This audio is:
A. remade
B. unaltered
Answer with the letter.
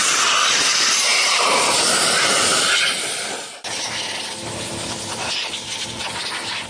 B